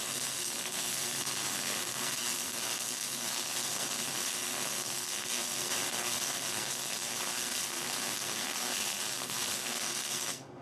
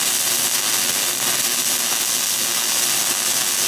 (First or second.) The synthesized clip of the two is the first